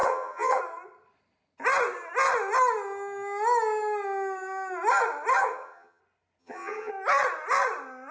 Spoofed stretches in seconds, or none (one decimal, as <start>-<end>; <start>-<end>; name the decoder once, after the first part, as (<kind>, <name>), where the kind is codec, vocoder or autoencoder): 0.0-0.6 (vocoder, HiFi-GAN); 5.4-6.0; 6.4-6.9